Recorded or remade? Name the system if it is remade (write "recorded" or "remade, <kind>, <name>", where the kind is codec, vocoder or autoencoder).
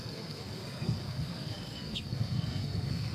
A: remade, codec, SNAC